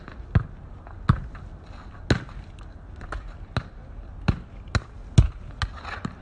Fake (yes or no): no